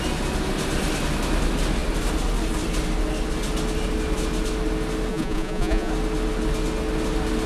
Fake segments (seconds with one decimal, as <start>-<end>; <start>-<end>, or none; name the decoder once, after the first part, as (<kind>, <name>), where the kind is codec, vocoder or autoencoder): 5.1-5.9 (vocoder, Vocos)